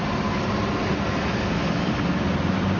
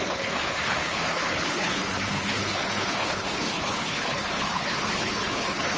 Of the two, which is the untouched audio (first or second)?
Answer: first